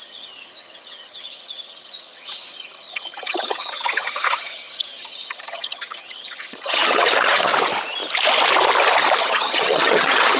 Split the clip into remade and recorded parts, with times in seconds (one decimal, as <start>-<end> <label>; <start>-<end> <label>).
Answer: 0.0-7.5 remade; 7.5-9.2 recorded; 9.2-10.4 remade